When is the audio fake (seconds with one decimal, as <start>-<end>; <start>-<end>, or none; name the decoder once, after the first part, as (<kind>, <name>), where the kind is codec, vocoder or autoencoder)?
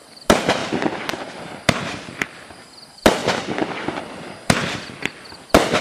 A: none